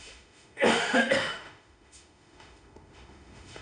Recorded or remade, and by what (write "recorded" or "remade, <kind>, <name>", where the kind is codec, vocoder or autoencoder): remade, autoencoder, DAC-VAE